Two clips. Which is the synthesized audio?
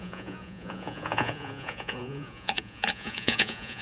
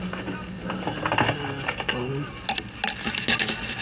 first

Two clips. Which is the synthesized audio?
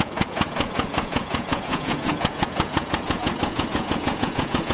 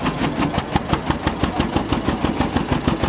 first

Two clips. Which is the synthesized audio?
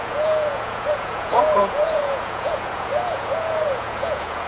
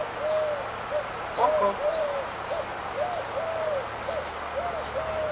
first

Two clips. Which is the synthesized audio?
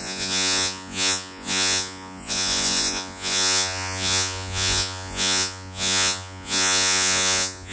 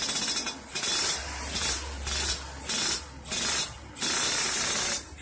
first